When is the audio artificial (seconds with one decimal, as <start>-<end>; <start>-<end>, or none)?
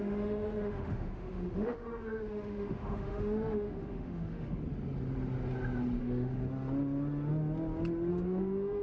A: 0.0-4.6; 6.0-6.4; 8.1-8.8